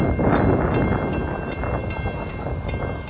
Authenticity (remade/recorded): recorded